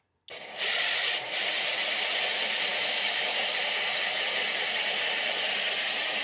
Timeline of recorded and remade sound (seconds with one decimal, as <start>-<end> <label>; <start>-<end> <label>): 0.0-2.7 recorded; 2.7-3.4 remade; 3.4-6.2 recorded